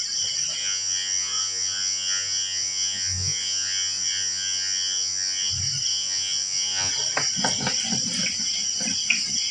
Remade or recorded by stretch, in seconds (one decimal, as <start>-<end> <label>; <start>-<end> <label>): 0.0-0.6 recorded; 0.6-5.5 remade; 5.5-5.9 recorded; 5.9-6.9 remade; 6.9-9.5 recorded